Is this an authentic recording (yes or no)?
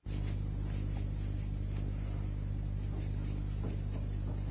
yes